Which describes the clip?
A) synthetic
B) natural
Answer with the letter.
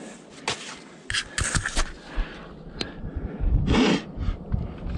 B